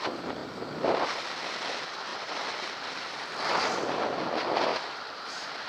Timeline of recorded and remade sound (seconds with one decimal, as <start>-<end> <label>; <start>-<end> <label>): 0.0-2.1 recorded; 2.1-3.1 remade; 3.1-4.7 recorded; 4.7-5.7 remade